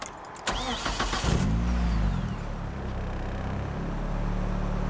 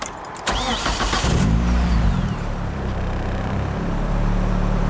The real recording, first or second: first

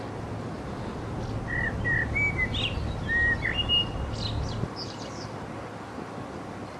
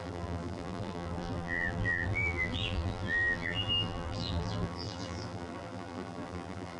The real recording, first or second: first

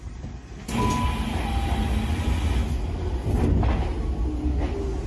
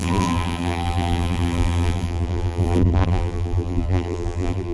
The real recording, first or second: first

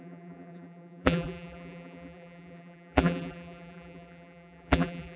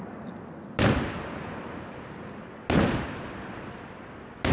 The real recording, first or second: second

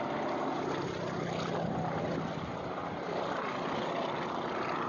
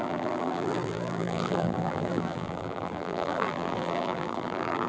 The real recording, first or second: first